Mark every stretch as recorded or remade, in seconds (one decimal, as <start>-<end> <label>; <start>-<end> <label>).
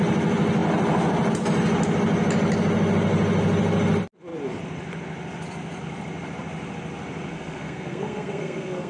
0.0-7.3 recorded; 7.3-8.9 remade